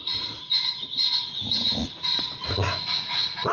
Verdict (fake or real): fake